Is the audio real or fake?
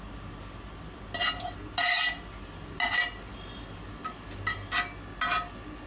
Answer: real